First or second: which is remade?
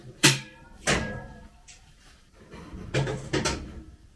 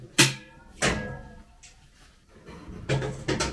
first